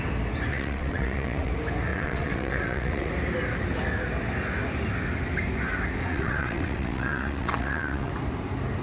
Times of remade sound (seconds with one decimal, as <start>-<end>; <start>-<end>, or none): 0.5-1.5; 1.9-3.1; 6.1-8.1